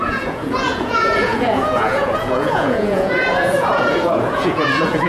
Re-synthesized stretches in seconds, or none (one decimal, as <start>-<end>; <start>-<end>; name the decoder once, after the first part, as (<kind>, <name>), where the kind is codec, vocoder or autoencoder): 0.0-5.1 (vocoder, Vocos)